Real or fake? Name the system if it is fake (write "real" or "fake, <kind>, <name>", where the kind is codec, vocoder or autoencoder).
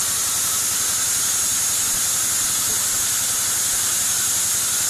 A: real